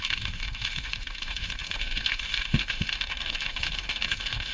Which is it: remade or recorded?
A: remade